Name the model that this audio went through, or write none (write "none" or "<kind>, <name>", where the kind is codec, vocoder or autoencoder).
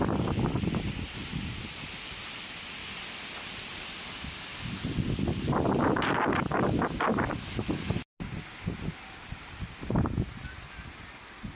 none